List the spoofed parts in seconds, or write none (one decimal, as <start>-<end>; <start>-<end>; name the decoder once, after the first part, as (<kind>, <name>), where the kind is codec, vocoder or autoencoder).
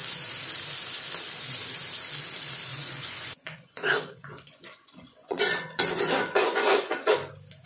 2.7-7.3 (vocoder, Vocos)